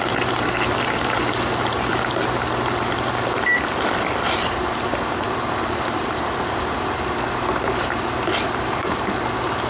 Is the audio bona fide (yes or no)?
yes